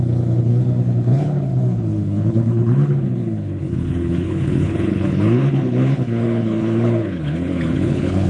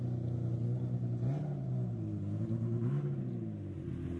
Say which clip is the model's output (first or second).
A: first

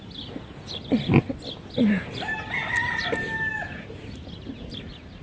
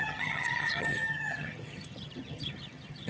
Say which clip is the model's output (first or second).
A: second